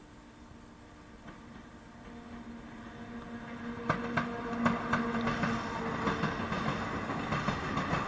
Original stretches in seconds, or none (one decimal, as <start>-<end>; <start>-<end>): 0.0-8.1